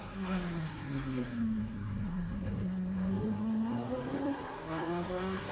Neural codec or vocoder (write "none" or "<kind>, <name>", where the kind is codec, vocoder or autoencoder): codec, SNAC